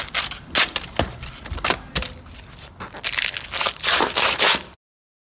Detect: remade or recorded recorded